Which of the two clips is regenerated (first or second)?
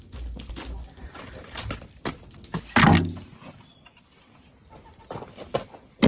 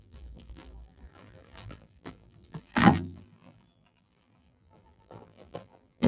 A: second